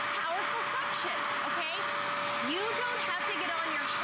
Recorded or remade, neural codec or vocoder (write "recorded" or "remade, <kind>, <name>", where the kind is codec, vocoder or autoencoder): recorded